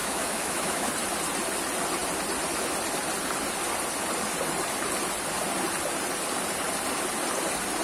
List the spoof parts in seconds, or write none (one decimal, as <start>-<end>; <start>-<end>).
0.0-0.9